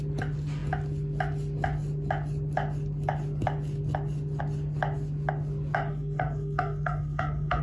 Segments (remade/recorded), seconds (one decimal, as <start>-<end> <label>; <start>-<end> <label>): 0.0-5.9 recorded; 5.9-7.6 remade